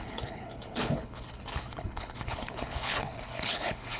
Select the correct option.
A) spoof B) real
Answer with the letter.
A